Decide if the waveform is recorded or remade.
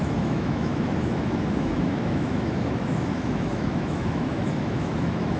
remade